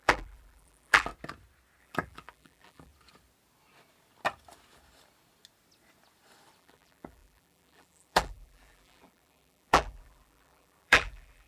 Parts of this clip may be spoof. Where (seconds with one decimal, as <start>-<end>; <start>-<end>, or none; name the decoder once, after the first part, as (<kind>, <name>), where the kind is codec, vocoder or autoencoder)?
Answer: 0.0-1.1 (vocoder, BigVGAN v2); 1.8-2.9; 6.6-11.5